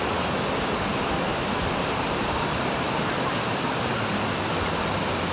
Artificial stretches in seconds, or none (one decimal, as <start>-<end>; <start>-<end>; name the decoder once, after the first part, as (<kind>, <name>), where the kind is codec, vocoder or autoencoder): 1.3-4.5 (vocoder, BigVGAN v2)